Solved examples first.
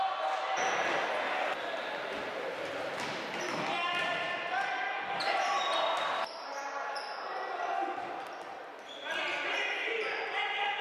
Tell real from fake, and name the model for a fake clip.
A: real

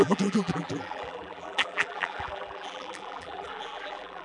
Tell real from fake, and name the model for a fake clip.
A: fake, vocoder, BigVGAN v2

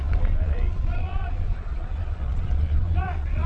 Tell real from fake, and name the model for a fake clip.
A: fake, vocoder, Vocos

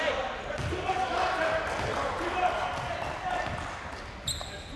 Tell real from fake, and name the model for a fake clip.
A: real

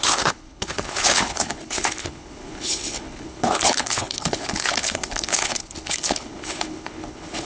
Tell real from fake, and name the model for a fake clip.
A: fake, codec, HILCodec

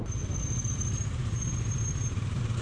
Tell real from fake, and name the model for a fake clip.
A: real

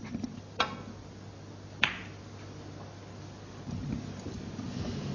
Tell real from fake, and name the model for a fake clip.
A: real